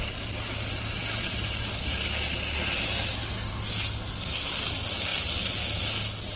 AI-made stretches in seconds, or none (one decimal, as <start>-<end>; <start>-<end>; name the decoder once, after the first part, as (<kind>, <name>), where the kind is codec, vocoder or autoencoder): none